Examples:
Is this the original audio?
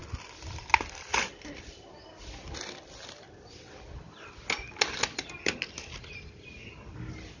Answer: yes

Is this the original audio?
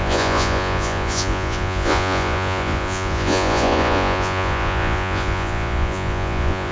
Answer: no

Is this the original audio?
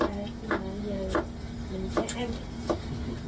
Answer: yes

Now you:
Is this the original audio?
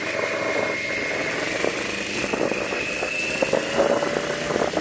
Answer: yes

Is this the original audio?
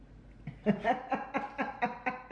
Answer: yes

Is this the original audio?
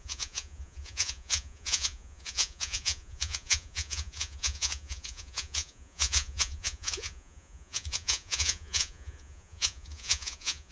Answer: no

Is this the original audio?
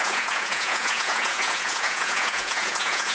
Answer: no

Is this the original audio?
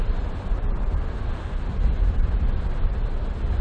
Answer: yes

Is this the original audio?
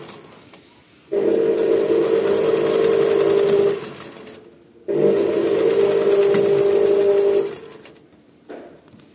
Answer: yes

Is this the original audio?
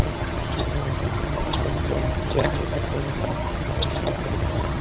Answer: no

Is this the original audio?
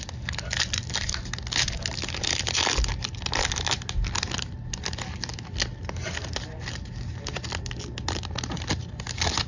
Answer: yes